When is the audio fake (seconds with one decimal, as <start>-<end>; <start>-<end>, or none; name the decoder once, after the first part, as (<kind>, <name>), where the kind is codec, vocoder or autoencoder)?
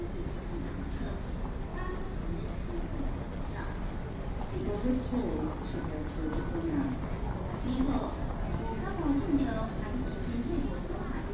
none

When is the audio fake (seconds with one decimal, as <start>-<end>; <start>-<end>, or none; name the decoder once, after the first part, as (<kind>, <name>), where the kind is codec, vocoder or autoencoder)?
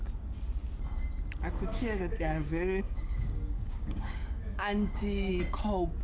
1.7-5.3 (codec, DAC)